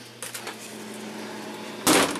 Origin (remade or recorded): recorded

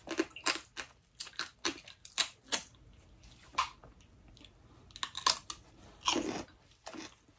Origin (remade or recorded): recorded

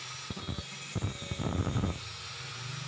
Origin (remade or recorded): recorded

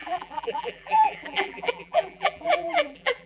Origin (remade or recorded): remade